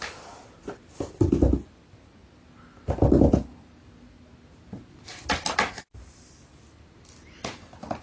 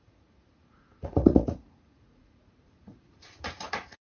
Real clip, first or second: first